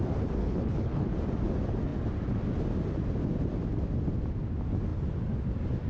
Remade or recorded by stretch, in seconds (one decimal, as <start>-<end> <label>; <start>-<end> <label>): 0.0-0.4 recorded; 0.4-1.1 remade; 1.1-5.9 recorded